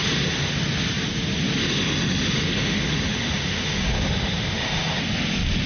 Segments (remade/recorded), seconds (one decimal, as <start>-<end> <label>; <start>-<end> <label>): 0.0-0.5 remade; 0.5-1.6 recorded; 1.6-5.0 remade; 5.0-5.7 recorded